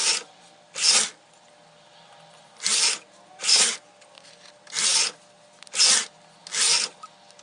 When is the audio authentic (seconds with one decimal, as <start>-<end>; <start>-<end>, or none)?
0.0-7.4